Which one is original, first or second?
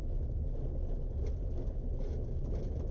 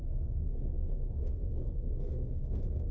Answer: first